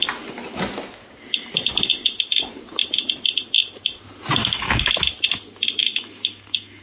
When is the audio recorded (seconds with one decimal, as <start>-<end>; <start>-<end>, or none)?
0.0-4.4; 4.9-5.8